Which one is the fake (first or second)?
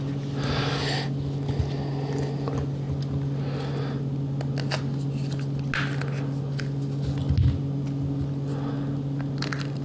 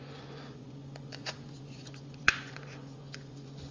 second